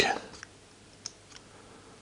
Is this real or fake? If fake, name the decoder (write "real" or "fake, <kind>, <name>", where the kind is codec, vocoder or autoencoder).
real